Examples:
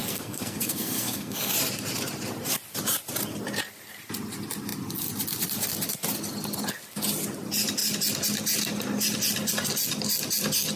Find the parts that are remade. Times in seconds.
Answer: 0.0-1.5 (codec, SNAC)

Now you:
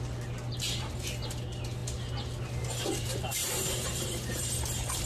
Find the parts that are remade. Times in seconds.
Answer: 3.4-4.5 (vocoder, BigVGAN v2)